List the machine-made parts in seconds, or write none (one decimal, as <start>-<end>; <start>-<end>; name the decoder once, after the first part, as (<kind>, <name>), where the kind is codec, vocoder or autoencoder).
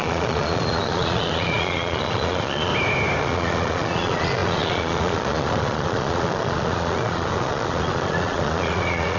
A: 0.0-2.7 (vocoder, Vocos); 3.2-9.2